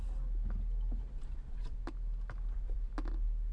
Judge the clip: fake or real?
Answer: real